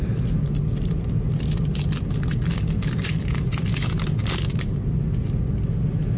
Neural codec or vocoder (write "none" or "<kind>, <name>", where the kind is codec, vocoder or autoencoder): none